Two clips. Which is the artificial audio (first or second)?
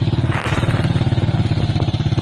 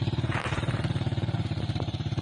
second